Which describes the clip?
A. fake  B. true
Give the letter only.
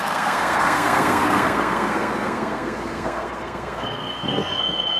A